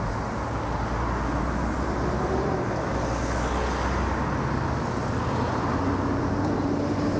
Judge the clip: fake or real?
real